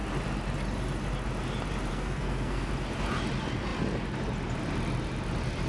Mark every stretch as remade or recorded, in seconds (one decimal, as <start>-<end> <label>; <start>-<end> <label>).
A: 0.0-1.9 recorded; 1.9-2.7 remade; 2.7-5.7 recorded